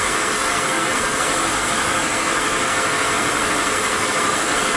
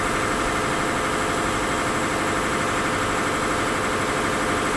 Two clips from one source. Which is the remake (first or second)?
first